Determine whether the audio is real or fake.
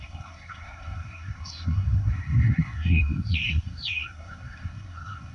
fake